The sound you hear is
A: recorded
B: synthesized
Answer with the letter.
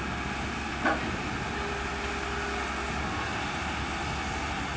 A